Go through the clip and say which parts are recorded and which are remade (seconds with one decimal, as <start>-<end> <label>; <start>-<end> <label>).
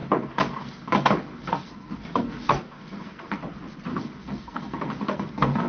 0.0-3.4 remade; 3.4-3.9 recorded; 3.9-5.7 remade